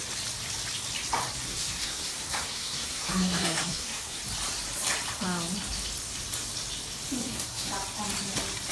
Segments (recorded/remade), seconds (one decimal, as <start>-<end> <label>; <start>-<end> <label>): 0.0-1.5 recorded; 1.5-4.2 remade; 4.2-7.2 recorded; 7.2-7.7 remade; 7.7-8.7 recorded